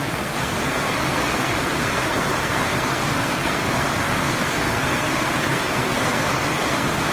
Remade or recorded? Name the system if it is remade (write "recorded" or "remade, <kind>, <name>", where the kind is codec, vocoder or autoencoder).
remade, codec, SNAC